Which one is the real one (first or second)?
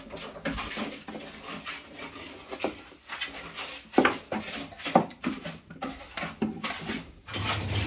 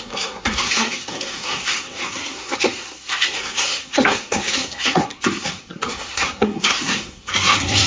first